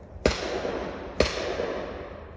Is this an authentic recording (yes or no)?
yes